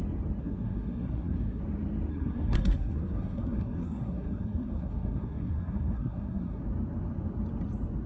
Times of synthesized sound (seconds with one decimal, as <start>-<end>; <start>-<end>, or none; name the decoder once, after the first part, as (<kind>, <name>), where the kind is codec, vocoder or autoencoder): 0.4-1.6 (codec, SNAC); 2.1-6.6